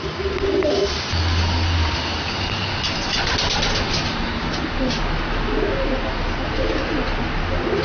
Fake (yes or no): no